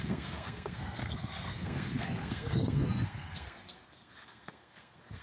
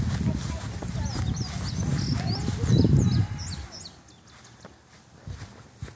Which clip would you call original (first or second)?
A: second